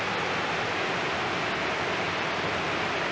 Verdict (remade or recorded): recorded